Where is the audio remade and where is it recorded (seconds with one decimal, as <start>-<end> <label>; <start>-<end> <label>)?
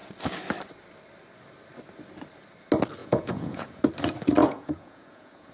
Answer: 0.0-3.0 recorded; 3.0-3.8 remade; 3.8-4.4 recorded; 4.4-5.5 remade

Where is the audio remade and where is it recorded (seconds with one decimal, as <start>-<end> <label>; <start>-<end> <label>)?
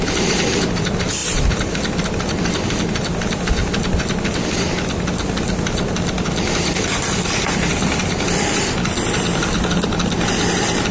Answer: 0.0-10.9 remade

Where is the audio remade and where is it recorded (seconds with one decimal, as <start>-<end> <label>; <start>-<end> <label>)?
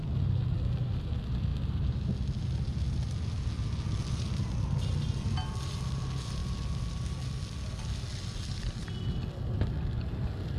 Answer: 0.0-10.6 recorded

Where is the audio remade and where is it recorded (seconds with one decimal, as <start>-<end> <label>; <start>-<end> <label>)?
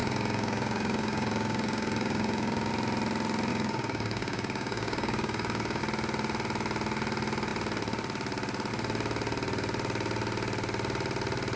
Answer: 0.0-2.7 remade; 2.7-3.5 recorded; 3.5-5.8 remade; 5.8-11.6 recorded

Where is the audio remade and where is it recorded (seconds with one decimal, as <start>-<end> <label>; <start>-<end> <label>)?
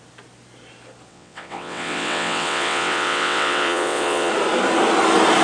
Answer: 0.0-1.1 recorded; 1.1-4.3 remade; 4.3-5.4 recorded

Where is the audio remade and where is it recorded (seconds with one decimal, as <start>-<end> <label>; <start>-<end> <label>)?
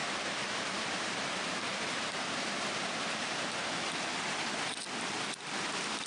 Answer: 0.0-3.7 remade; 3.7-6.1 recorded